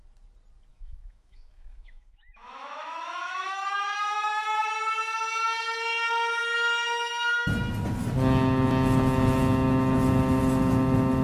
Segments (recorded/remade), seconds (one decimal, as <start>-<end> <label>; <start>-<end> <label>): 0.0-0.7 recorded; 0.7-4.7 remade; 4.7-11.2 recorded